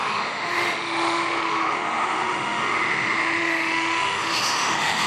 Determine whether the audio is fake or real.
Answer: fake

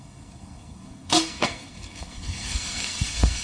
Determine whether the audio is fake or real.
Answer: fake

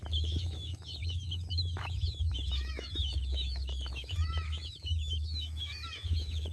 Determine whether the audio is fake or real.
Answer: fake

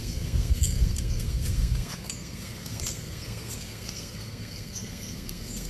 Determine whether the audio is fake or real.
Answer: fake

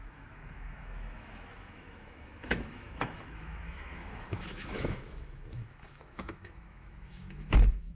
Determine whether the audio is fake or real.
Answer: fake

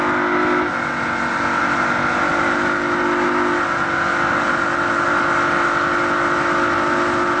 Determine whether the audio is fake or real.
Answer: real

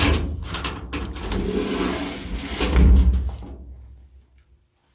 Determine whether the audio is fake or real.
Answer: real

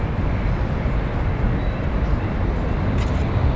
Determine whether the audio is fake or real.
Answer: real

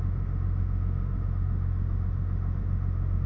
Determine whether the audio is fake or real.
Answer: fake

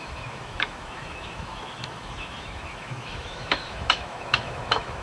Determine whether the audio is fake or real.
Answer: fake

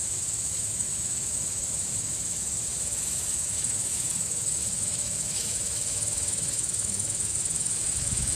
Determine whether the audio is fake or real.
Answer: fake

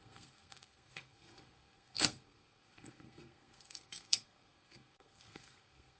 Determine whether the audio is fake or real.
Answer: fake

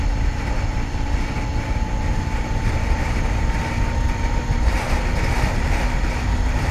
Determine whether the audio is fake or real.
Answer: real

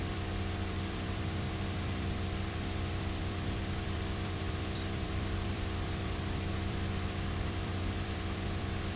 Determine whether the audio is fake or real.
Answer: fake